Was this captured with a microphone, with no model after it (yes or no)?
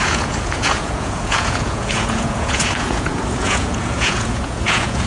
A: no